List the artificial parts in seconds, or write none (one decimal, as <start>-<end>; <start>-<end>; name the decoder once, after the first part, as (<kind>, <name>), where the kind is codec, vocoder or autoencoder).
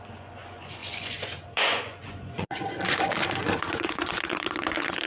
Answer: 0.0-5.1 (vocoder, Vocos)